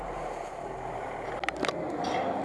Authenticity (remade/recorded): recorded